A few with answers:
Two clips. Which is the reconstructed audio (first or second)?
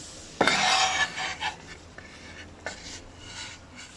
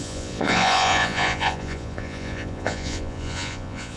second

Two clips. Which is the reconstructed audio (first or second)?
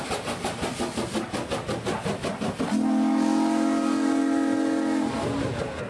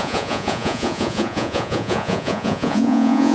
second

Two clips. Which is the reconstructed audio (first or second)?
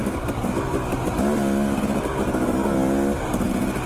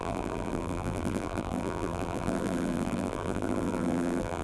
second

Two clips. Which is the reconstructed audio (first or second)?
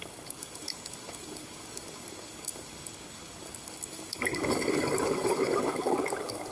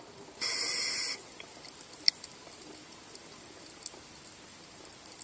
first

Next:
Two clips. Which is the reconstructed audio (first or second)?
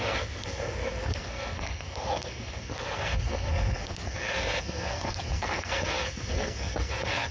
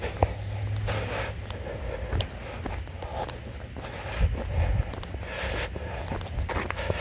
first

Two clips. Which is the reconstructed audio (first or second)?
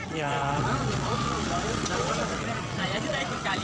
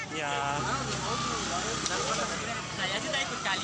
first